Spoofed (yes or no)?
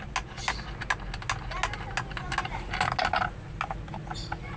no